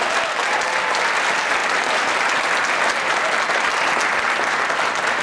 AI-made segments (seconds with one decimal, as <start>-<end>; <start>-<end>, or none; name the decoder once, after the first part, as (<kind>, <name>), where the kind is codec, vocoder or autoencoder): none